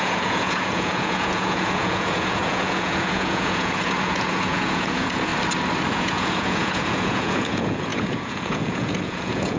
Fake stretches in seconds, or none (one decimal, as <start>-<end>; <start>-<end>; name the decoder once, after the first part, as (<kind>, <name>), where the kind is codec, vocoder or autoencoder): 0.0-5.3 (vocoder, Vocos); 5.9-9.6